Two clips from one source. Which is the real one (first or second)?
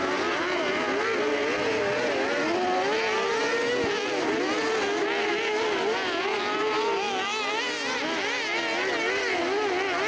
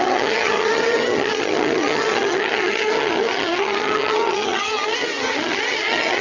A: first